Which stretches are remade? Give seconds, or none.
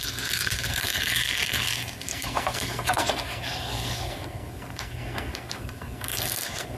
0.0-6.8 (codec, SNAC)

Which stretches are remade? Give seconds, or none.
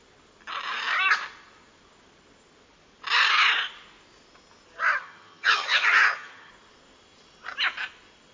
5.0-6.5 (vocoder, HiFi-GAN)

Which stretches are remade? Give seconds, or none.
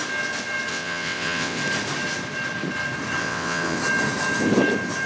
0.7-1.6 (vocoder, WaveNeXt); 3.2-3.8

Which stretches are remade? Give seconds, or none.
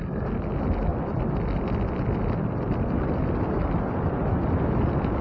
none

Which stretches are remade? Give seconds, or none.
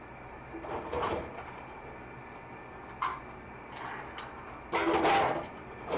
none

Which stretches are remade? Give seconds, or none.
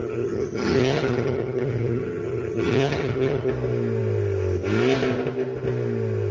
0.0-3.5 (vocoder, HiFi-GAN)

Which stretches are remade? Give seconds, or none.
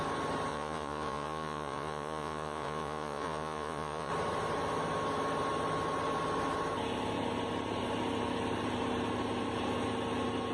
0.5-4.1 (vocoder, Vocos)